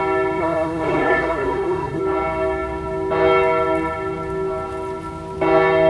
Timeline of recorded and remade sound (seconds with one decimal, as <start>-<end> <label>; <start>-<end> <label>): 0.0-0.4 recorded; 0.4-2.0 remade; 2.0-5.9 recorded